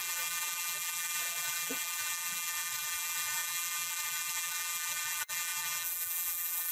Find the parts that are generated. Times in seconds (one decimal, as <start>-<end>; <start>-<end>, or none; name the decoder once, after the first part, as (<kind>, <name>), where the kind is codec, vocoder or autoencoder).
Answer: 0.0-6.7 (vocoder, BigVGAN v2)